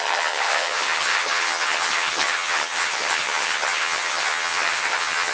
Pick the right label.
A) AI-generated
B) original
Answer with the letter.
A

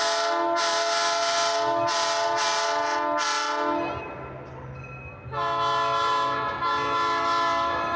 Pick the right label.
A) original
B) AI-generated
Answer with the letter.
A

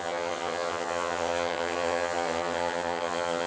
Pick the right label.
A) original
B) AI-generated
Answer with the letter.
B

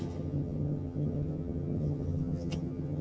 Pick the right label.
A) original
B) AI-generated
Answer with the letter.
B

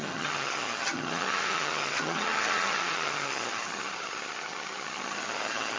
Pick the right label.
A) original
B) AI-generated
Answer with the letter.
B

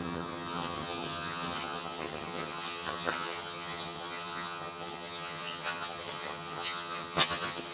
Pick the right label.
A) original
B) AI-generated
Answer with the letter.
B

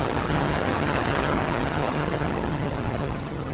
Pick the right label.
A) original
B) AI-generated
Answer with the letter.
B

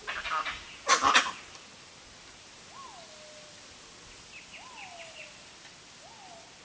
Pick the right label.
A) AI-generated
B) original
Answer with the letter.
B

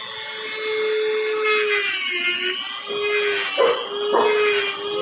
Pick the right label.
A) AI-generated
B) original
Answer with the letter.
B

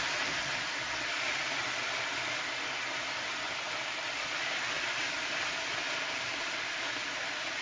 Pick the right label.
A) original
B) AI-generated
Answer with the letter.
A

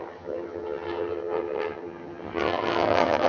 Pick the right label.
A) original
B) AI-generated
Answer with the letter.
B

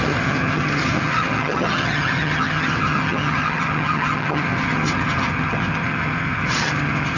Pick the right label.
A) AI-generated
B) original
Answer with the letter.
A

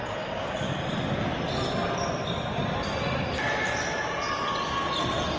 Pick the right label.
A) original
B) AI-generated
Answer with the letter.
A